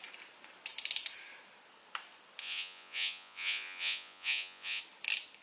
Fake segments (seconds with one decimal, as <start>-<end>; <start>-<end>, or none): 2.4-4.8